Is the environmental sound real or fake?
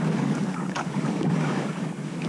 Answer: fake